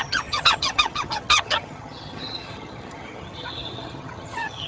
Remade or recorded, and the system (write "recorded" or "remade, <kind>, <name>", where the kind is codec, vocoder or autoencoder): remade, vocoder, HiFi-GAN